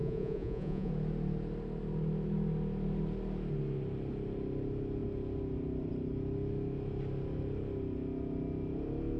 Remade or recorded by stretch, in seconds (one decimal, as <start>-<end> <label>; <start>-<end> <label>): 0.0-0.9 remade; 0.9-9.2 recorded